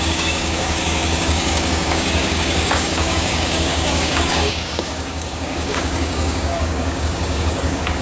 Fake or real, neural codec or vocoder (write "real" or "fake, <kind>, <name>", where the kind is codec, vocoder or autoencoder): fake, codec, DAC